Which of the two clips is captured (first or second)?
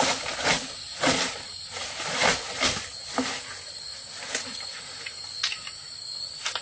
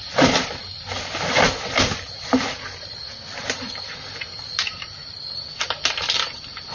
first